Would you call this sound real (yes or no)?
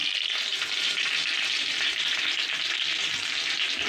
yes